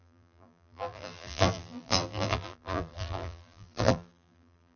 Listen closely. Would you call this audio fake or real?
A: fake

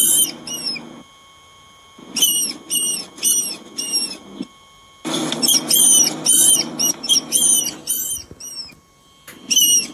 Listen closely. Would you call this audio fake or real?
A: real